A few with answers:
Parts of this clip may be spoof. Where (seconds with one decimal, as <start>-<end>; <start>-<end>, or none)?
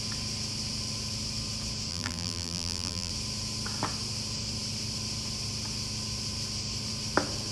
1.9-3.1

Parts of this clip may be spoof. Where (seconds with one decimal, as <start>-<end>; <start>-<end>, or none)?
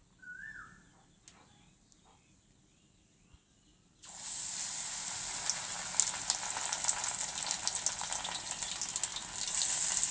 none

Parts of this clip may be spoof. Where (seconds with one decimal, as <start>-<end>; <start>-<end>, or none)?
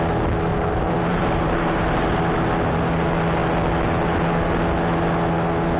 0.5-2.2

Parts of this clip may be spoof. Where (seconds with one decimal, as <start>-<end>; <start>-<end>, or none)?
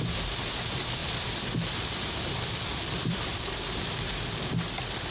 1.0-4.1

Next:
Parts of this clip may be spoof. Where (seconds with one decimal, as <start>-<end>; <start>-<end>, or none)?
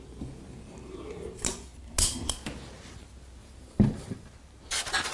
3.4-4.3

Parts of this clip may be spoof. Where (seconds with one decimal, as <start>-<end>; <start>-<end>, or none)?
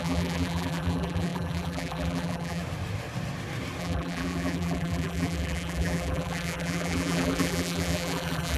0.0-2.6; 3.8-8.6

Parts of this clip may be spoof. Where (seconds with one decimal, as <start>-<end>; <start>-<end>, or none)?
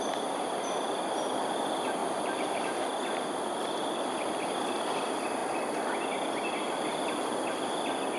2.0-4.1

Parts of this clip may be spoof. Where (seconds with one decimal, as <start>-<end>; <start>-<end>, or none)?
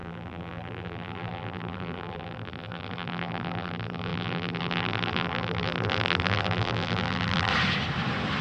0.0-7.5